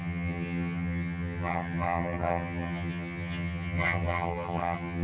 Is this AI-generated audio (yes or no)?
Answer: yes